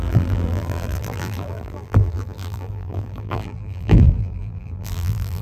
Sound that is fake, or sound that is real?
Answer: fake